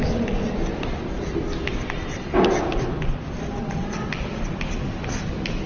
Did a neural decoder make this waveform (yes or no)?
no